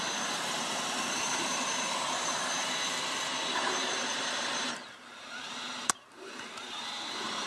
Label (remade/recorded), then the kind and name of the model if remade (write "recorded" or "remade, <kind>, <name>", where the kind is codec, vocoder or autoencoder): remade, vocoder, BigVGAN v2